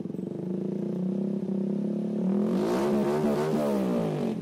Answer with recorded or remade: recorded